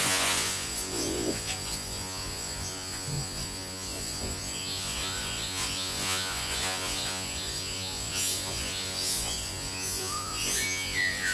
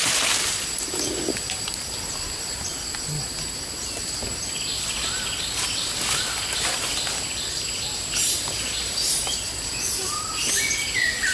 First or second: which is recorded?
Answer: second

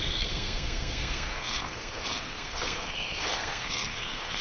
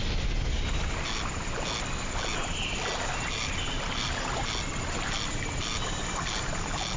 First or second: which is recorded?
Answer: second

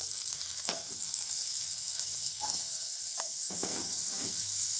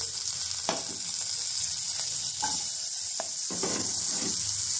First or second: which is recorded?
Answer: second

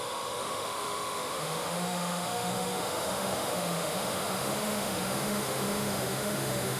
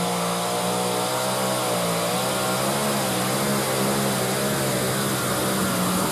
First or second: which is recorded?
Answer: second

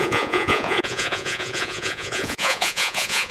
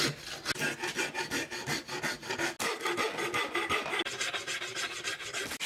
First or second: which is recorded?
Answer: second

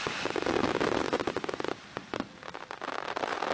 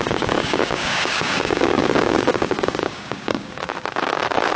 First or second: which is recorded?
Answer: first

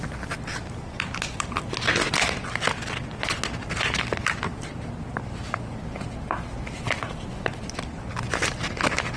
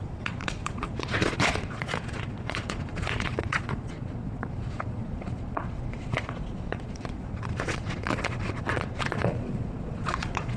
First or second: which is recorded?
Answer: first